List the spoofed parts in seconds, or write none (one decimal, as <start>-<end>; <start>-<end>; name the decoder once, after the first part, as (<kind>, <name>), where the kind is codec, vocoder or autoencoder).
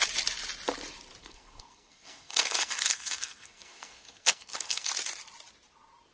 1.2-4.9 (codec, SNAC)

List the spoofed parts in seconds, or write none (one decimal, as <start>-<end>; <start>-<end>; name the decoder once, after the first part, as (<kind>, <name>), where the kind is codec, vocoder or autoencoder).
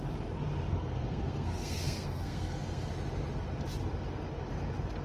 0.7-2.9 (codec, SNAC)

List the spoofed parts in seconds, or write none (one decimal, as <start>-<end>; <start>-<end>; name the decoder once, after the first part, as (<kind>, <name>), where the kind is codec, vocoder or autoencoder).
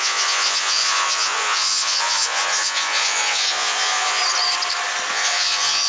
0.0-4.2 (vocoder, Vocos); 5.1-5.9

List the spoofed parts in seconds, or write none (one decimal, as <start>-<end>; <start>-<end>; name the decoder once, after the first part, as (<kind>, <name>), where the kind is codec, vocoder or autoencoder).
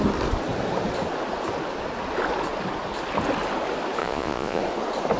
4.0-4.6 (vocoder, Vocos)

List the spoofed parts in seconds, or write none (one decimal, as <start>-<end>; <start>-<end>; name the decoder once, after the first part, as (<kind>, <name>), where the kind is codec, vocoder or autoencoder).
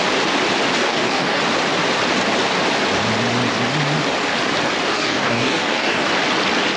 0.8-1.4 (codec, DAC); 4.8-6.1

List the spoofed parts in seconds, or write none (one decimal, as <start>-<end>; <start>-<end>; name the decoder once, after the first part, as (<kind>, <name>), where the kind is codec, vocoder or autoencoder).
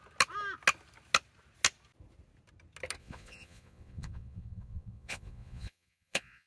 3.0-6.5 (vocoder, Vocos)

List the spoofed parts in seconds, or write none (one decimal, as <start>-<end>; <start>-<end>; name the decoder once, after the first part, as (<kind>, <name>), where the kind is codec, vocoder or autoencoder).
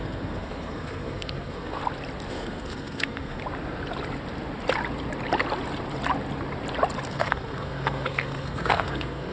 0.0-1.8 (codec, SNAC); 2.3-3.4; 7.1-9.3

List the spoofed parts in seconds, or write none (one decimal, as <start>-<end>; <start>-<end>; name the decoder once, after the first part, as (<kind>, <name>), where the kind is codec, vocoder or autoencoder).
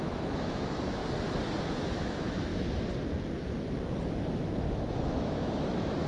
0.0-1.0 (autoencoder, DAC-VAE); 1.6-2.5; 4.1-6.1